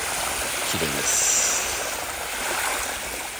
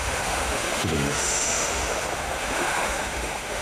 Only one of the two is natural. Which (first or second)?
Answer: first